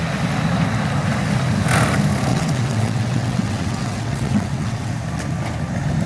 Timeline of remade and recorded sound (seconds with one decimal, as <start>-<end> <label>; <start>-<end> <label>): 0.0-2.3 recorded; 2.3-4.9 remade; 4.9-6.1 recorded